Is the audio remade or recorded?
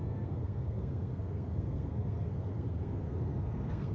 remade